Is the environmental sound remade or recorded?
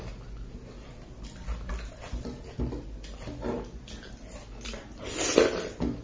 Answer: recorded